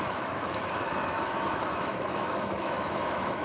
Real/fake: fake